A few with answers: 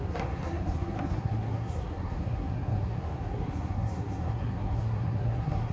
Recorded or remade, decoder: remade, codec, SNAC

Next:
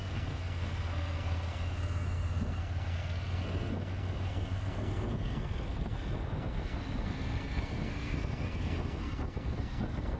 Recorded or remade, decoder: remade, codec, SNAC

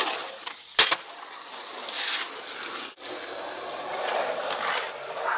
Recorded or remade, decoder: recorded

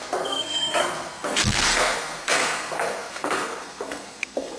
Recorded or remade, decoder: remade, codec, SNAC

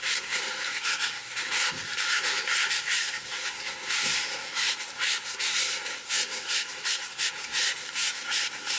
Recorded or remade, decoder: remade, codec, SNAC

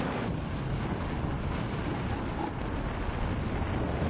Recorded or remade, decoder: recorded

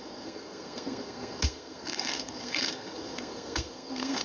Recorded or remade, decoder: remade, codec, SNAC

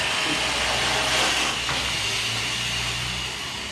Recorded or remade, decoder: recorded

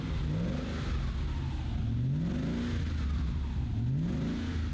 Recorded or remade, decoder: recorded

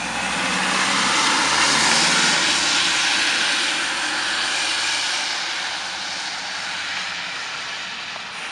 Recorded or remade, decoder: recorded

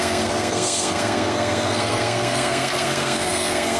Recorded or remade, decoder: remade, codec, SNAC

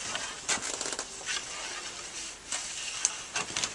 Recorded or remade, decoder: recorded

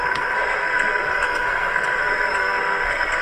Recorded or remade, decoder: remade, codec, SNAC